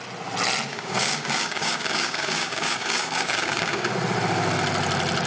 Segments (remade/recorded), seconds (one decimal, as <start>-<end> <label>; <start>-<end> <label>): 0.0-0.7 recorded; 0.7-3.9 remade; 3.9-5.3 recorded